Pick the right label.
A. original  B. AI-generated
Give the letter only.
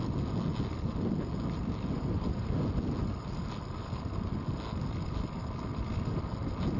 A